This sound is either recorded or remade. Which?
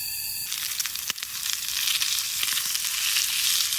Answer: recorded